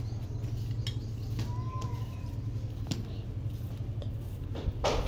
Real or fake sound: real